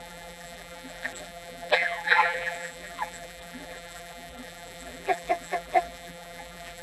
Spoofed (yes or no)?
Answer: yes